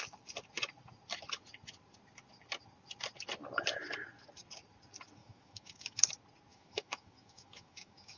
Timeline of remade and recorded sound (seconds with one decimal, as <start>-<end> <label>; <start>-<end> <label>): 0.0-5.2 recorded; 5.2-6.1 remade; 6.1-6.5 recorded; 6.5-8.2 remade